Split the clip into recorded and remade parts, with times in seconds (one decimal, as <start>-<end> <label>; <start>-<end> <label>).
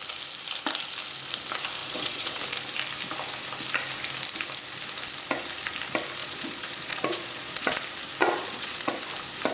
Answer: 0.0-1.8 recorded; 1.8-2.4 remade; 2.4-6.2 recorded; 6.2-7.8 remade; 7.8-8.2 recorded; 8.2-9.0 remade; 9.0-9.5 recorded